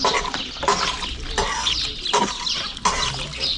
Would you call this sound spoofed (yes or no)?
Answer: no